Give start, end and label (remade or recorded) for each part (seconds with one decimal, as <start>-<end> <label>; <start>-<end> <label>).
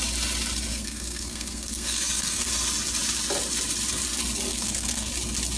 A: 0.0-0.7 recorded; 0.7-2.5 remade; 2.5-4.5 recorded; 4.5-5.1 remade; 5.1-5.6 recorded